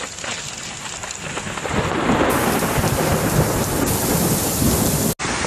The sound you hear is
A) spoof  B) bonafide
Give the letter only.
B